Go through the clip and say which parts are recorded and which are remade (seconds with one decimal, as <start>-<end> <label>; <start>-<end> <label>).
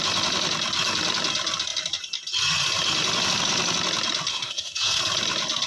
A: 0.0-4.3 recorded; 4.3-5.0 remade; 5.0-5.7 recorded